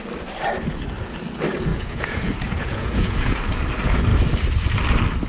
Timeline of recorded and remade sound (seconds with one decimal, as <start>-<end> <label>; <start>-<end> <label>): 0.0-1.7 recorded; 1.7-3.4 remade; 3.4-5.3 recorded